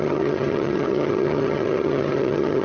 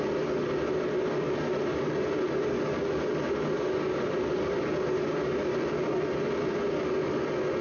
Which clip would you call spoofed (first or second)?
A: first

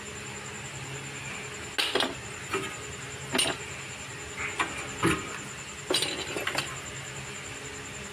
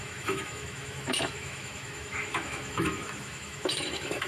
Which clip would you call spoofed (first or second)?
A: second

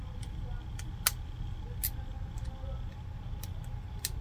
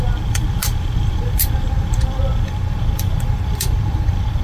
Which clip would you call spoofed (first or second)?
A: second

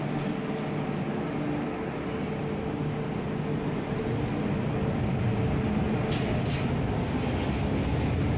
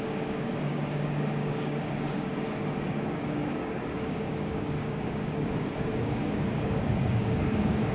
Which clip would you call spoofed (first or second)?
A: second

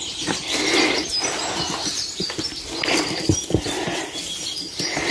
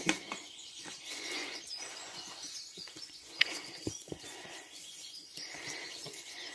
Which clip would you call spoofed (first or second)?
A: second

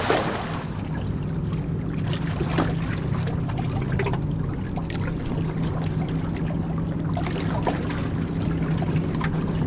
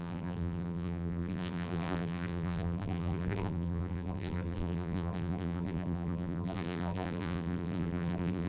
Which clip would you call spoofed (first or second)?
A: second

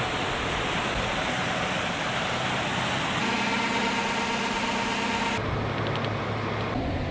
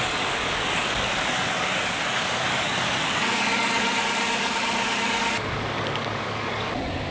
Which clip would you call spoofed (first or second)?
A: second